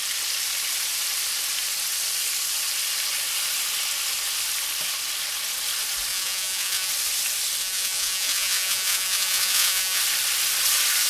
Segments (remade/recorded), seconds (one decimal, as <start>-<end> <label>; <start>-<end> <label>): 0.0-6.1 recorded; 6.1-6.9 remade; 6.9-7.6 recorded; 7.6-10.0 remade; 10.0-11.1 recorded